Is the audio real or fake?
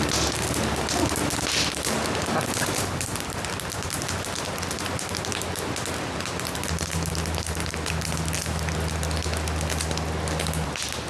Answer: real